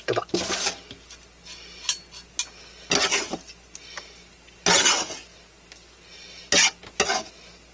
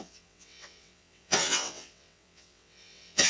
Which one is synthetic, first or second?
second